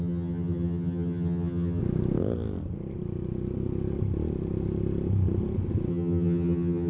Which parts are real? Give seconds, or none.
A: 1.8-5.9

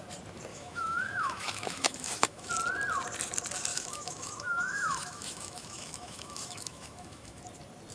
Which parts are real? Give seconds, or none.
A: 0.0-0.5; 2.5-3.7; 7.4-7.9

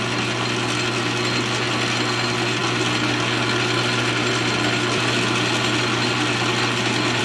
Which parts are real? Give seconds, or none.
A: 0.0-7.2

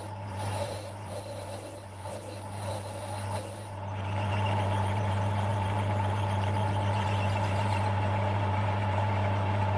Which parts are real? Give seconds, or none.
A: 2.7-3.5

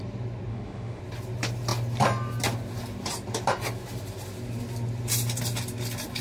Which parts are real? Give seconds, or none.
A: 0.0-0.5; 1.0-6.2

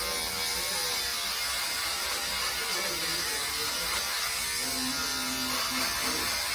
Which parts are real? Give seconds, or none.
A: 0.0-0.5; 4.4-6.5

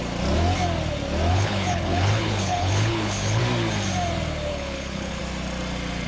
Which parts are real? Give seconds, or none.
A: 0.0-1.3; 3.4-4.5; 5.2-6.1